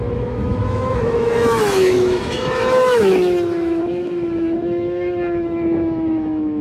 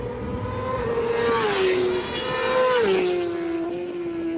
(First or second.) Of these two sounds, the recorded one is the second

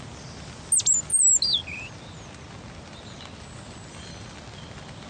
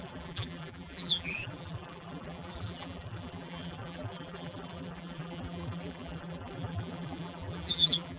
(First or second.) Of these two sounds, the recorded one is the first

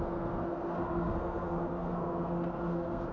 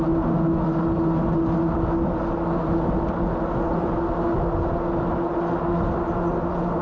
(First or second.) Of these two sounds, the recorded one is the second